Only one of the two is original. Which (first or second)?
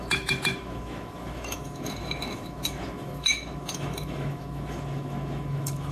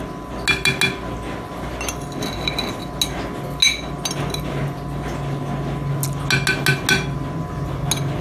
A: second